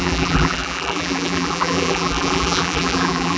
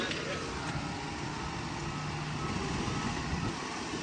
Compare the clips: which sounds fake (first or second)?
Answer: first